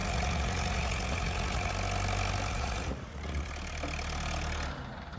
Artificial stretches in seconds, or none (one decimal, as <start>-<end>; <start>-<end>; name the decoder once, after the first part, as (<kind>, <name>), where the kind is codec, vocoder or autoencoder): 0.0-1.7 (vocoder, Vocos); 2.5-3.5